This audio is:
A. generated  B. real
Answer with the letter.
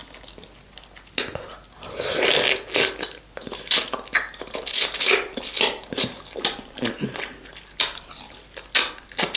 B